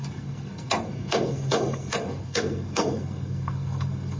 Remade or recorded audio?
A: remade